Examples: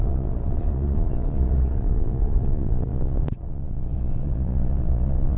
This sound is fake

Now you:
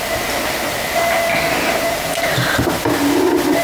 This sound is real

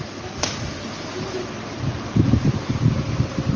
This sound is real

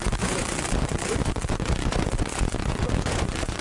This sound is fake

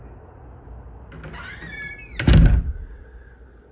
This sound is real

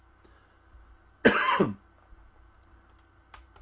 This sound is real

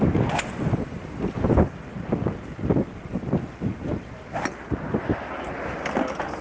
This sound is real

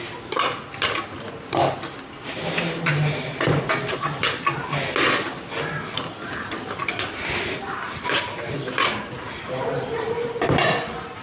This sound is real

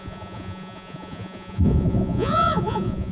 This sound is fake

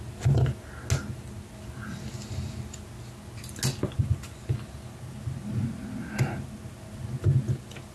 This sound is real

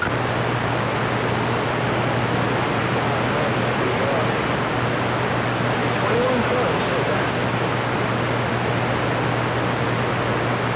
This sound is real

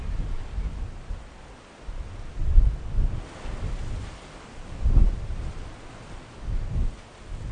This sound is real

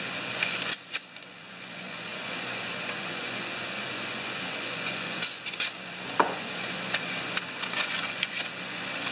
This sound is fake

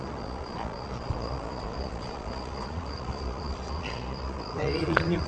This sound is fake